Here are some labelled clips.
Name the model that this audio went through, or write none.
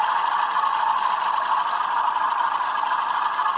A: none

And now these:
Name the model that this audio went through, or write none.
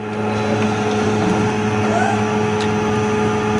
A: none